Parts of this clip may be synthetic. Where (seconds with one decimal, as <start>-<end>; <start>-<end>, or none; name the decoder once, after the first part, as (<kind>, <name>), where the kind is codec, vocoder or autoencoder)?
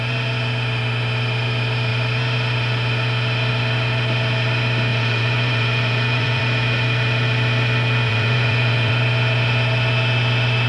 4.9-6.4 (vocoder, Vocos); 8.1-8.9